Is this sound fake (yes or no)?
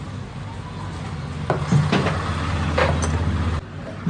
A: no